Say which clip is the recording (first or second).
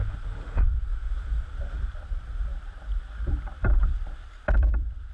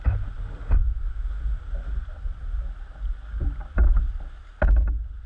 second